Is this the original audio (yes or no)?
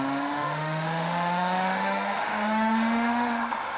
no